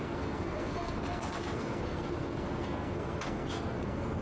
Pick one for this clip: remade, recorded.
remade